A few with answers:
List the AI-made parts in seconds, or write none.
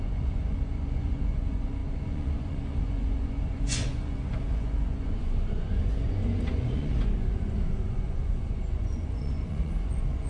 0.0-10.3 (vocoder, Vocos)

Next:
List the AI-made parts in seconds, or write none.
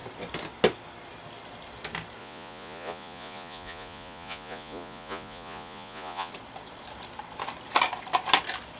2.2-6.3 (vocoder, Vocos)